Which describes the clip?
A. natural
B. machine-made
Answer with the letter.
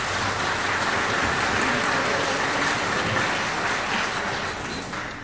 A